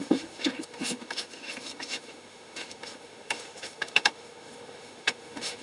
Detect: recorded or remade remade